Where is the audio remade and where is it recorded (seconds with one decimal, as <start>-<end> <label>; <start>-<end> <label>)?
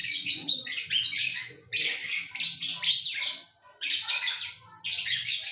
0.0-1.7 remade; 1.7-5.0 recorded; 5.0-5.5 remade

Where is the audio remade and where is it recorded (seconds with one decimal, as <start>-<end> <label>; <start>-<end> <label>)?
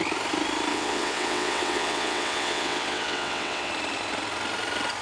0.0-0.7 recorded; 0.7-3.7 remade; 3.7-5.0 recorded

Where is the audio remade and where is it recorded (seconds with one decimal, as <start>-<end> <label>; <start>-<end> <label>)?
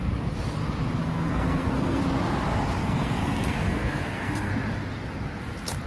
0.0-1.0 recorded; 1.0-2.0 remade; 2.0-2.8 recorded; 2.8-4.5 remade; 4.5-5.9 recorded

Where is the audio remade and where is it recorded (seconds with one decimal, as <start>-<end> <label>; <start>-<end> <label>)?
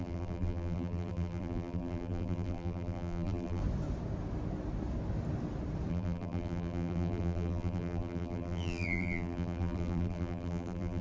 0.0-3.6 remade; 3.6-5.9 recorded; 5.9-11.0 remade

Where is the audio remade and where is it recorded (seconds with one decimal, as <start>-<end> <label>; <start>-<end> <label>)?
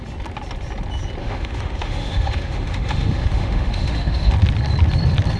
0.0-1.2 recorded; 1.2-4.3 remade; 4.3-5.4 recorded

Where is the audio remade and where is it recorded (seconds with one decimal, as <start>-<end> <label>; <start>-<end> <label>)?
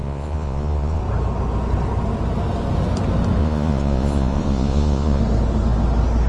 0.0-1.0 remade; 1.0-3.4 recorded; 3.4-5.2 remade; 5.2-6.3 recorded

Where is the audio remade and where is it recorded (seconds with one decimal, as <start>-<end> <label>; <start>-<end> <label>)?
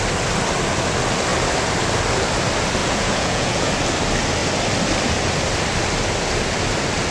0.0-2.8 recorded; 2.8-3.7 remade; 3.7-7.1 recorded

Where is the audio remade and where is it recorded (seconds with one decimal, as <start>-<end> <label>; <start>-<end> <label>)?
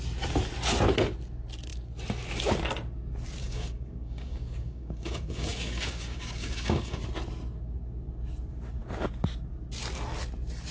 0.0-3.4 recorded; 3.4-7.0 remade; 7.0-10.7 recorded